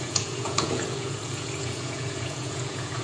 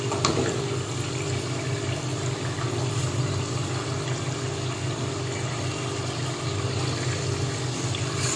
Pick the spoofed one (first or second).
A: first